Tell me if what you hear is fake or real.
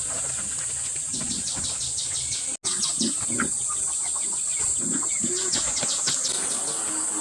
real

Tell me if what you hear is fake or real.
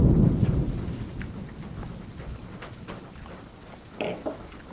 real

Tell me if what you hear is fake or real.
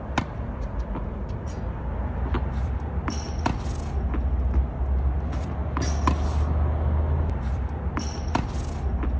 real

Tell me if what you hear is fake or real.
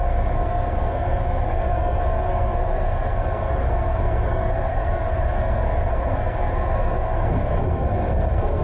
fake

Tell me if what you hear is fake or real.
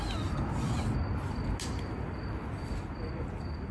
real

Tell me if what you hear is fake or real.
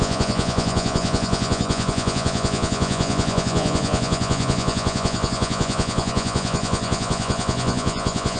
fake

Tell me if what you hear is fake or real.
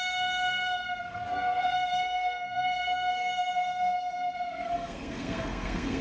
fake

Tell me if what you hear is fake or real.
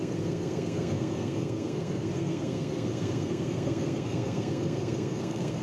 fake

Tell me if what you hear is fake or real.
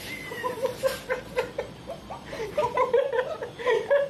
fake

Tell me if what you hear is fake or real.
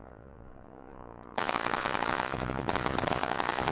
fake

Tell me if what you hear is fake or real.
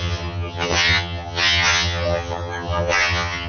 fake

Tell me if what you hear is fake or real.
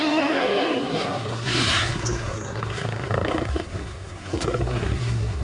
fake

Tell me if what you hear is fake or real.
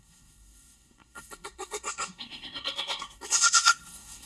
fake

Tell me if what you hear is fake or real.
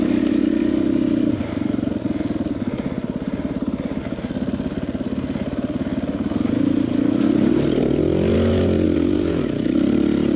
real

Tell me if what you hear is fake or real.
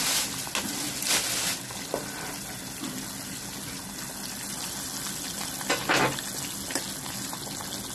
real